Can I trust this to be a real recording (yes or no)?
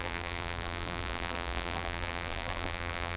no